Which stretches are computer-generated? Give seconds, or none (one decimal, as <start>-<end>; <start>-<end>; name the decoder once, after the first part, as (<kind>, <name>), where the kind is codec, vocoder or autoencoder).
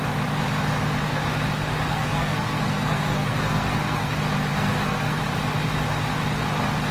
1.9-4.1 (codec, SNAC); 4.5-5.2